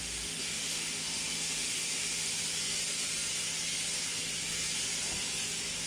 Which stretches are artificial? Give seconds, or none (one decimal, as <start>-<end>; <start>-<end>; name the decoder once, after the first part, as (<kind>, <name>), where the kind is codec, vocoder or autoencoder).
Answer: 0.0-2.3 (autoencoder, DAC-VAE)